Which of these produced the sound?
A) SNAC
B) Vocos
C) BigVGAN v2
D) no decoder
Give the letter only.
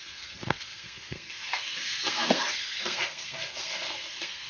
A